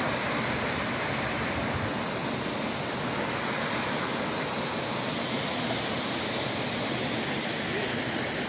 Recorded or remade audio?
recorded